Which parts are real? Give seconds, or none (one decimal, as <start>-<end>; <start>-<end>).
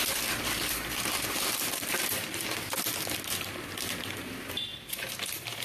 none